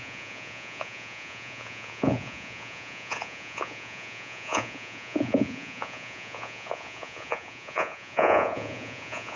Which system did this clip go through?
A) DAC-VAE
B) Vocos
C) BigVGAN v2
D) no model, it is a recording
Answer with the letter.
B